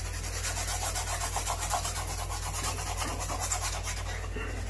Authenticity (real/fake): real